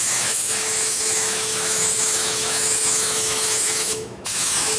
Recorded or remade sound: remade